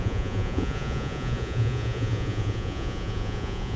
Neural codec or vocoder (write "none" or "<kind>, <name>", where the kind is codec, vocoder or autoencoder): vocoder, Vocos